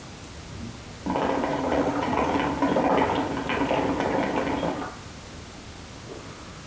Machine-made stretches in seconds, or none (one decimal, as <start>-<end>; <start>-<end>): 1.5-2.3